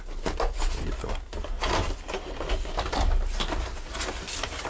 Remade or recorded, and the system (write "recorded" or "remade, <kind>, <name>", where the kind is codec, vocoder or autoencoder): recorded